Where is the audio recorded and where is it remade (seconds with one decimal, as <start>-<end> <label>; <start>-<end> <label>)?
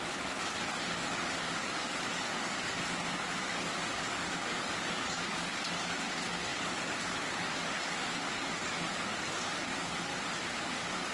0.0-10.1 remade; 10.1-10.6 recorded; 10.6-11.1 remade